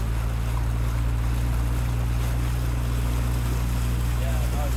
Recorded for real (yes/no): yes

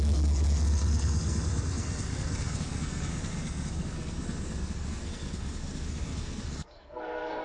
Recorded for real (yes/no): no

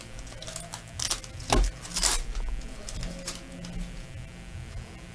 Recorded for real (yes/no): yes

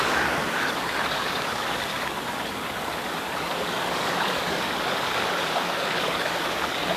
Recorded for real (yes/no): no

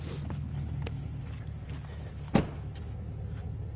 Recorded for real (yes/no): yes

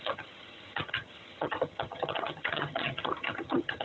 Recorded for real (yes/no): no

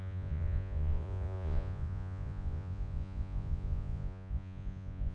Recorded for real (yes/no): no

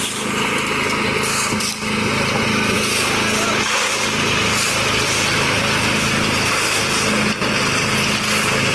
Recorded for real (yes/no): yes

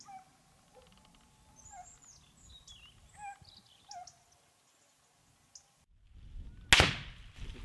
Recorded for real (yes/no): yes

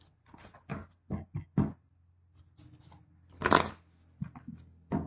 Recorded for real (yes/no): yes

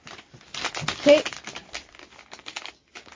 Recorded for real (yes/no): yes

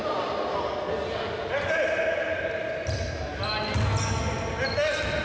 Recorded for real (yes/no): yes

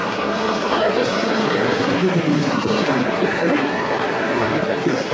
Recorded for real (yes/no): no